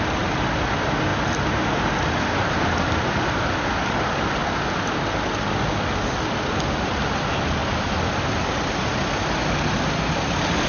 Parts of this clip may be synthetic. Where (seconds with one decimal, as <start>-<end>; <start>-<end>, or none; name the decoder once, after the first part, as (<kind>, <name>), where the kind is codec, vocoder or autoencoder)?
none